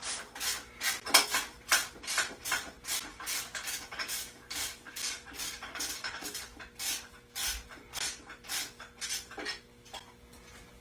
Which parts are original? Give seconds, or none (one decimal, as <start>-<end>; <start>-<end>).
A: 0.0-3.1; 6.6-10.8